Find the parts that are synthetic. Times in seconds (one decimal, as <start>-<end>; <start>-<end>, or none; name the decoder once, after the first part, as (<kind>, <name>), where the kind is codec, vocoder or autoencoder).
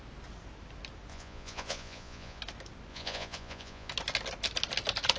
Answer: 1.1-2.4 (vocoder, Vocos); 2.9-3.9